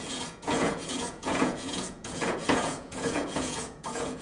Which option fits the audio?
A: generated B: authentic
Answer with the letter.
A